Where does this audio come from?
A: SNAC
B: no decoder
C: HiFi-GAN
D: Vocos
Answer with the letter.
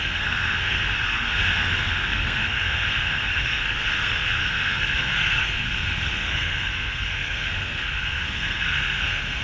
A